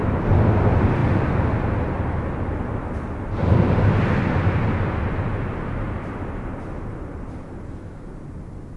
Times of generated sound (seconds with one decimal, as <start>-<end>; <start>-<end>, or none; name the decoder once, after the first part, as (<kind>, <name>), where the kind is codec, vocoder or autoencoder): none